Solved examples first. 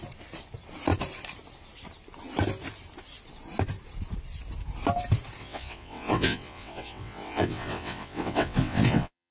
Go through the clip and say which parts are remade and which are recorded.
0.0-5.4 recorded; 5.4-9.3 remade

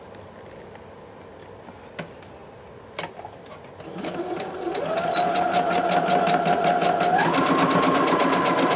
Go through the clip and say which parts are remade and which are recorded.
0.0-8.8 recorded

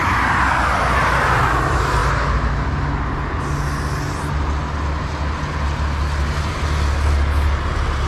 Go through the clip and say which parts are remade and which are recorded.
0.0-8.1 recorded

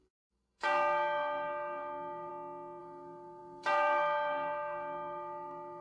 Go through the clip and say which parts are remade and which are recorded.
0.0-2.3 remade; 2.3-2.8 recorded; 2.8-5.8 remade

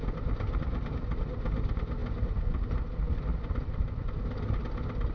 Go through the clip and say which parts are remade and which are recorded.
0.0-5.1 recorded